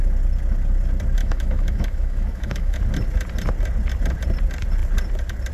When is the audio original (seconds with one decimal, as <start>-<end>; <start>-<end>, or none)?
0.0-1.2; 2.8-5.5